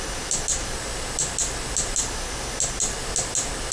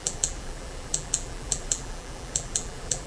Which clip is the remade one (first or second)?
second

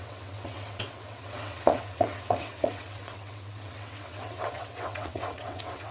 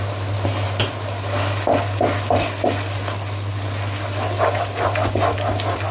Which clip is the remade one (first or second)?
first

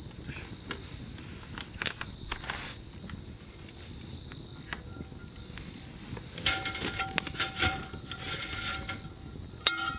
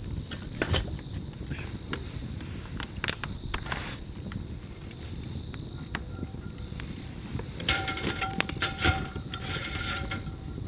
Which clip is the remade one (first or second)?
second